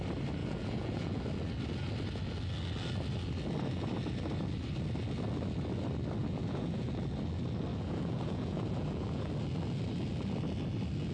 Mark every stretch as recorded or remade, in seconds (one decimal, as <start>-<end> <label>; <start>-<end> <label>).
0.0-0.4 recorded; 0.4-1.2 remade; 1.2-6.2 recorded; 6.2-6.9 remade; 6.9-7.7 recorded; 7.7-9.3 remade; 9.3-11.1 recorded